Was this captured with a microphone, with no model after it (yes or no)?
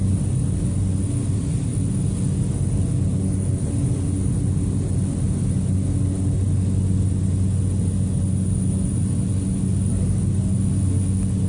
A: yes